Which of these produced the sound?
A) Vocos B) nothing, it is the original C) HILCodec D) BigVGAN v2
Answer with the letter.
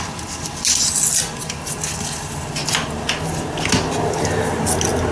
B